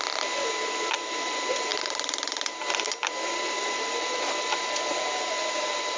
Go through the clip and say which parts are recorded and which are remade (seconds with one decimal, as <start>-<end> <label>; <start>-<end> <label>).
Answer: 0.0-6.0 recorded